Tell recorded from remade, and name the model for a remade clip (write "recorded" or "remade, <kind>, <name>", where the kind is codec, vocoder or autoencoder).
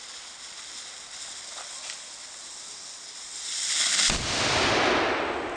recorded